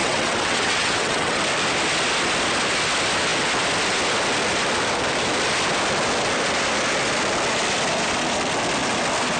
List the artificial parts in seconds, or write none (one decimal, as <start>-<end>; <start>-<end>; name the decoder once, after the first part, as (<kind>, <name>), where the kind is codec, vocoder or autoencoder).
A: 0.0-1.4 (vocoder, WaveNeXt)